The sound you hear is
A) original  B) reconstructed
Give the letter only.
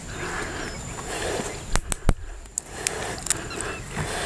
A